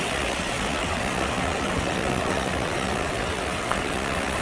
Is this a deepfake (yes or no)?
yes